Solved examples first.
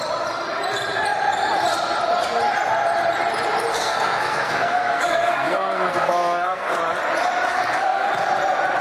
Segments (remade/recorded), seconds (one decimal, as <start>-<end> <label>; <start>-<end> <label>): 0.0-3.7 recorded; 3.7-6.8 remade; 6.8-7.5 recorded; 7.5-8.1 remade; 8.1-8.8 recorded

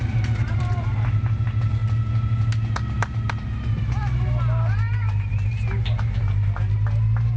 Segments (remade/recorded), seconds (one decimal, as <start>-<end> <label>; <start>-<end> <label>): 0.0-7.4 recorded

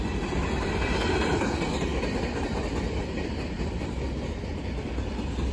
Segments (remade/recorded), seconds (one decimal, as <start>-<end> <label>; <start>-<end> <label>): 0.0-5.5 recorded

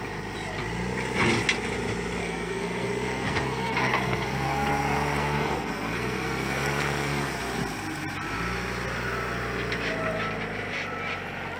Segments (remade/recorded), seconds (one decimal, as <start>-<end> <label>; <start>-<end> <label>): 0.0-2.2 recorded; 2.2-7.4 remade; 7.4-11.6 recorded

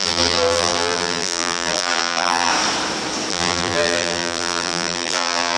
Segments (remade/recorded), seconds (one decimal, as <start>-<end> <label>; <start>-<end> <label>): 0.0-2.5 remade; 2.5-3.3 recorded; 3.3-5.6 remade

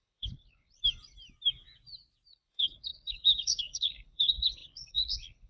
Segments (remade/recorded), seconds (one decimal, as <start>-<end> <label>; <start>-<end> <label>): 0.0-0.8 remade; 0.8-2.3 recorded; 2.3-5.5 remade